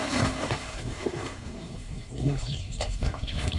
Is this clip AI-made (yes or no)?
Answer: yes